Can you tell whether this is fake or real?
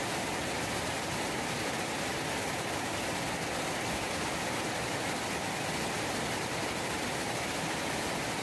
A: real